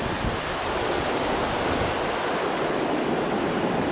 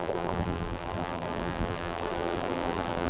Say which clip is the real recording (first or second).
first